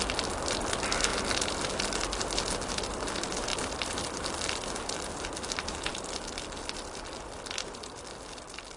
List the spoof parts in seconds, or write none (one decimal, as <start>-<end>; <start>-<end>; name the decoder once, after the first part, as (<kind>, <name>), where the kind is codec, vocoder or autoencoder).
none